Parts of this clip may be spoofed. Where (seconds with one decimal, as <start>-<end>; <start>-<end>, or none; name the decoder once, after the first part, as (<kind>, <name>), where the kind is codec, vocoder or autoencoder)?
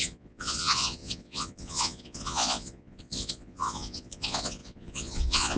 0.0-5.6 (vocoder, Vocos)